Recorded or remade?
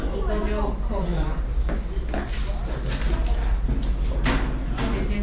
recorded